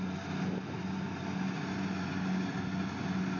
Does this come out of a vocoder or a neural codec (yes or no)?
no